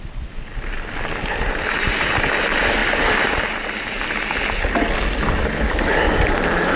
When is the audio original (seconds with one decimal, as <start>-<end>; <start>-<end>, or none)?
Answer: 0.0-6.8